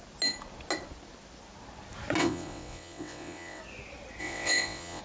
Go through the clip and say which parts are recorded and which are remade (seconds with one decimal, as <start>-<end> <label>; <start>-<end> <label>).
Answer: 0.0-2.2 recorded; 2.2-3.6 remade; 3.6-4.2 recorded; 4.2-5.0 remade